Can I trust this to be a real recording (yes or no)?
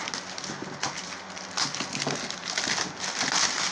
yes